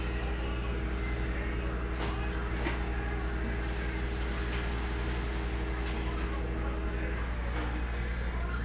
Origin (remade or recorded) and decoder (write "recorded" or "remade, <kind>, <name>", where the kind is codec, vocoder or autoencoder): recorded